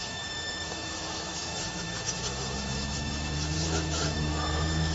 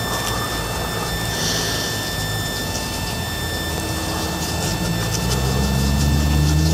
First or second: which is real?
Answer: second